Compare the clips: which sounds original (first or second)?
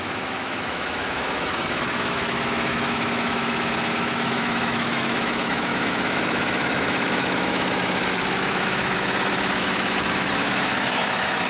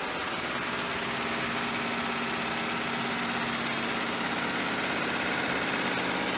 second